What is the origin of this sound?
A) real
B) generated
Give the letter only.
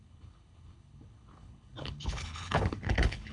B